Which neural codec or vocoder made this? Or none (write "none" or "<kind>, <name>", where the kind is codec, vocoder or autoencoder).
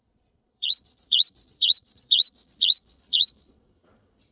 vocoder, Vocos